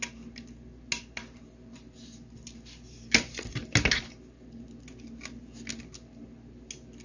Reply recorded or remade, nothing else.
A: recorded